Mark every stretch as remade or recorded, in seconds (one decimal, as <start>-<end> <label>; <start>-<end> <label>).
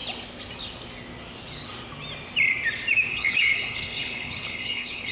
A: 0.0-3.1 recorded; 3.1-5.1 remade